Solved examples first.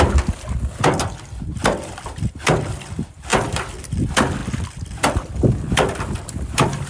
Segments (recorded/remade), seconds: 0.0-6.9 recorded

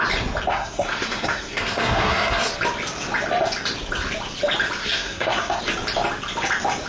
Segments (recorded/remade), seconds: 0.0-0.5 recorded; 0.5-2.5 remade; 2.5-4.8 recorded; 4.8-5.6 remade; 5.6-6.9 recorded

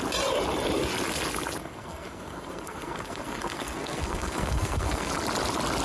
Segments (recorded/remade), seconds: 0.0-1.6 recorded; 1.6-5.1 remade; 5.1-5.8 recorded